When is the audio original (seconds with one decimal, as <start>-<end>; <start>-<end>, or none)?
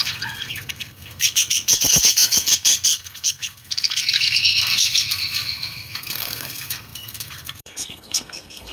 none